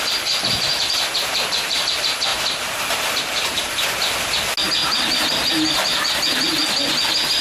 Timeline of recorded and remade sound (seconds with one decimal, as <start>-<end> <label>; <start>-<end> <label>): 0.0-2.3 recorded; 2.3-3.7 remade; 3.7-4.8 recorded; 4.8-6.0 remade; 6.0-7.4 recorded